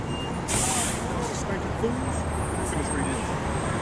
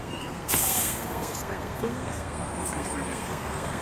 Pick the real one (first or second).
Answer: first